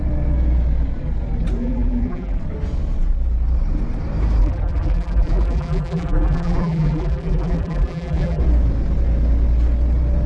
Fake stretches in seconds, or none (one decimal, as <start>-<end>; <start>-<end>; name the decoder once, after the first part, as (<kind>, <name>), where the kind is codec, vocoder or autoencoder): 1.6-2.4 (vocoder, BigVGAN v2); 4.4-8.4